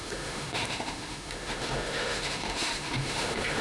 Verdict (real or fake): fake